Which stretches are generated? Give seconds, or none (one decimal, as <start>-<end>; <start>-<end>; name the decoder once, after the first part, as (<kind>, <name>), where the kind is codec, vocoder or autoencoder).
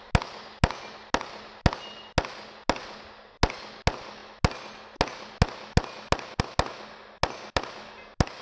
none